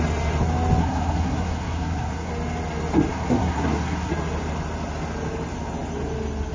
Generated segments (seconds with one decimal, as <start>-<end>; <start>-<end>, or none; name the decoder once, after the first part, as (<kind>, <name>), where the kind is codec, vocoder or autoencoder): 0.8-2.3 (codec, SNAC); 3.1-4.1